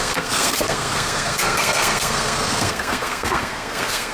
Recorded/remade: remade